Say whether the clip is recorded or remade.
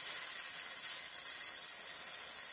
recorded